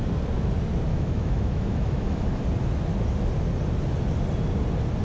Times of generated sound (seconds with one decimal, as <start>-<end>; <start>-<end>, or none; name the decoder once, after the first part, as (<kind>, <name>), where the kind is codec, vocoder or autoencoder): 0.9-2.4 (autoencoder, DAC-VAE)